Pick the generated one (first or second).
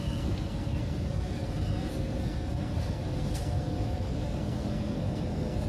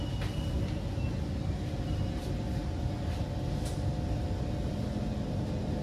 first